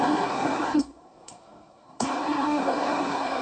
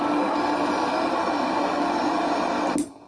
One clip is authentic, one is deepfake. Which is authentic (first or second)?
second